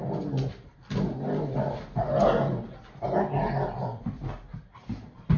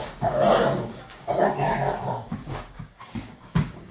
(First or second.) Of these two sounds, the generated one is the second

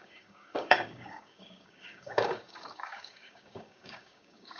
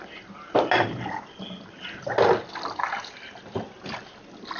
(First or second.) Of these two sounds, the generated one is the first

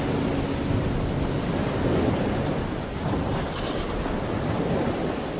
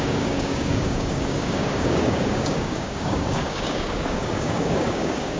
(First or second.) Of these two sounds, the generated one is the second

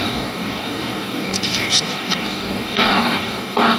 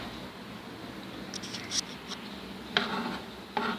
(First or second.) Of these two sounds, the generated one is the first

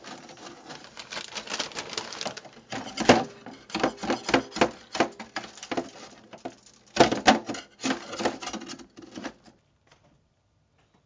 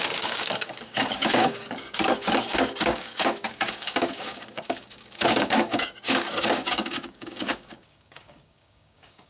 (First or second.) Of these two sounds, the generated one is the second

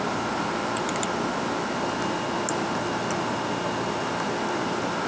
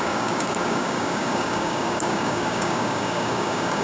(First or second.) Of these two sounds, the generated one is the second